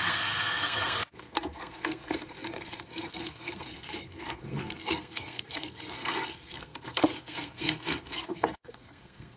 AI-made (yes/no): yes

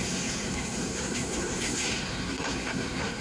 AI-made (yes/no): yes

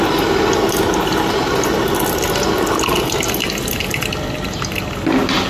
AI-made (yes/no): no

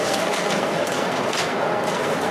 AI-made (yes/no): yes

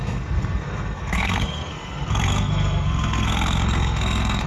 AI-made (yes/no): yes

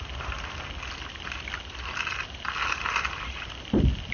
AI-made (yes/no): no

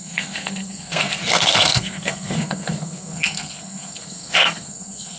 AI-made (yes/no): yes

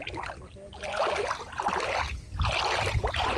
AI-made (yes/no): no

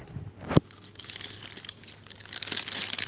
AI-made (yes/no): no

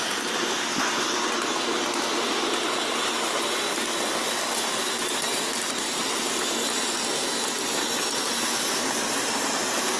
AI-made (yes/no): no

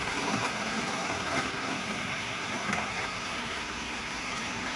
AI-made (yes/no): yes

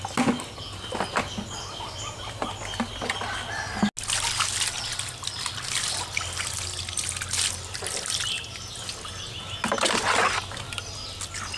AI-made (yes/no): no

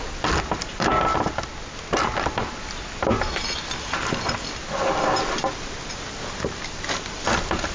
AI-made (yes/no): no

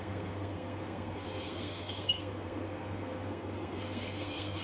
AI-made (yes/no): yes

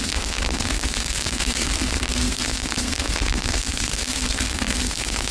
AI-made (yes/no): yes